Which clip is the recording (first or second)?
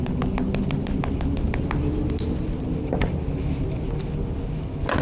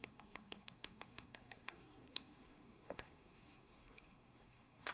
first